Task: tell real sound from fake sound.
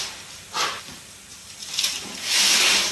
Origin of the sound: fake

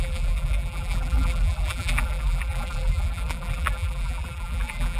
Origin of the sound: fake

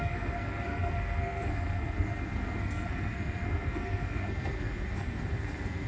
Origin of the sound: fake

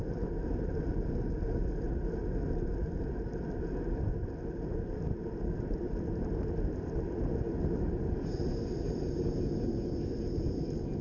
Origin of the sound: real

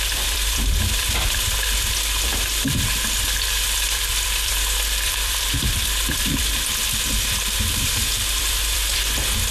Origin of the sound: fake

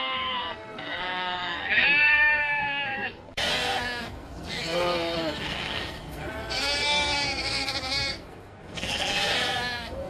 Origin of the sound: fake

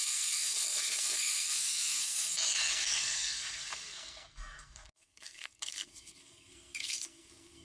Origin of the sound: fake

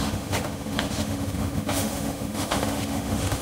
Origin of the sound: fake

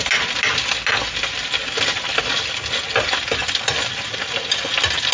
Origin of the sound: real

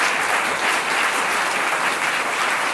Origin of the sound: real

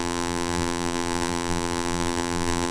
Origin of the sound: fake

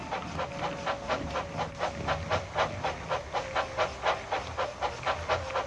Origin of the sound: real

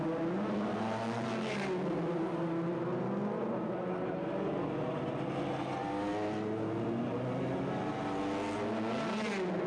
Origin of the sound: real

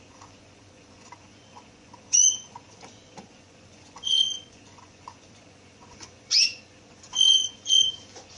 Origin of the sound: fake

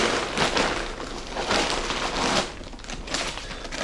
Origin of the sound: real